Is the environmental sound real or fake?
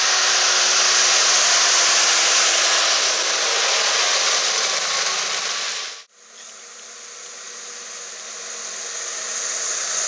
real